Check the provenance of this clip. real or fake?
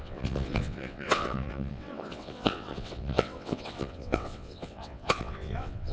fake